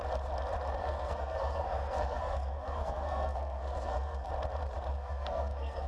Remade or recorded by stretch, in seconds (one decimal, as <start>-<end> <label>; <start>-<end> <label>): 0.0-0.8 recorded; 0.8-4.3 remade; 4.3-4.9 recorded; 4.9-5.9 remade